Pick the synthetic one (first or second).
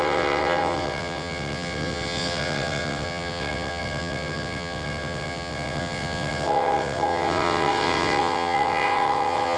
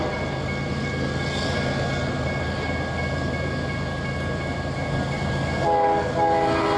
first